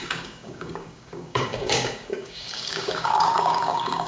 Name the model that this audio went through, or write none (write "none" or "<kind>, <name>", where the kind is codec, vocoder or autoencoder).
codec, DAC